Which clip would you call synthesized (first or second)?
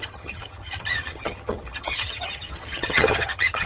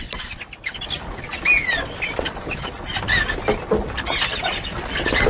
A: first